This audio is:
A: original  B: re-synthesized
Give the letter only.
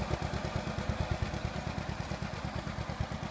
A